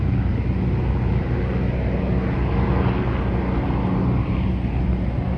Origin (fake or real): real